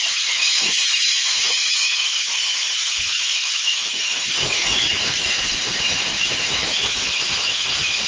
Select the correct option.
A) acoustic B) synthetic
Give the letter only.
B